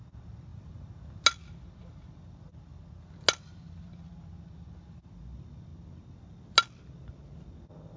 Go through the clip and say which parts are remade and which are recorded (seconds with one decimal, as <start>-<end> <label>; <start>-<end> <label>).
0.0-8.0 recorded